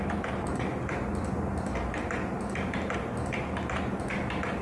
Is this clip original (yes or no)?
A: yes